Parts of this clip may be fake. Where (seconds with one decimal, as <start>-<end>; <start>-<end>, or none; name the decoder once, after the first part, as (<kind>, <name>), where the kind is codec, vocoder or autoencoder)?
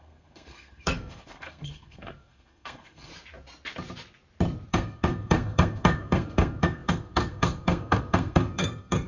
0.0-3.1 (codec, SNAC); 4.7-9.1